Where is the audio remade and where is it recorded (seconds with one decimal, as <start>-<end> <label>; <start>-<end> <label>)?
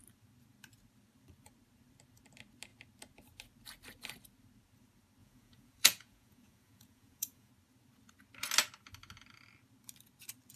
0.0-5.2 recorded; 5.2-7.5 remade; 7.5-10.6 recorded